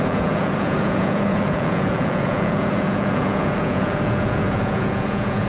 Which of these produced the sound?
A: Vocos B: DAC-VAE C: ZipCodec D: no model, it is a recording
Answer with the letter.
A